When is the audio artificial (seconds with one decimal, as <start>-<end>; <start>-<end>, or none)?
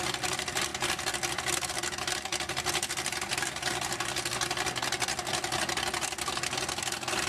2.3-2.9; 3.3-4.3